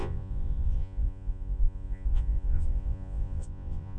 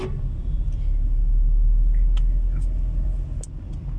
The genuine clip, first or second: second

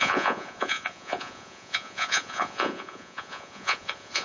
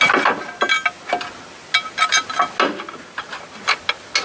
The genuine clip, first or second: second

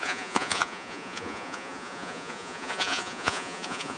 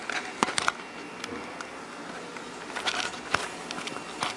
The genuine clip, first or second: second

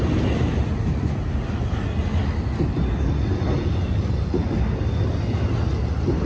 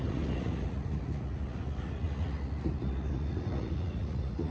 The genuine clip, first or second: first